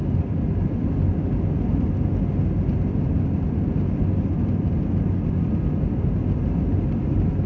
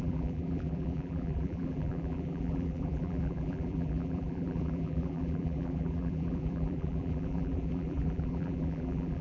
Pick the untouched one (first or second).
first